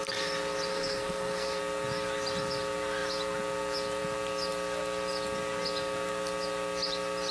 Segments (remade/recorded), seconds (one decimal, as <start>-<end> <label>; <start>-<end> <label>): 0.0-0.7 recorded; 0.7-1.6 remade; 1.6-7.3 recorded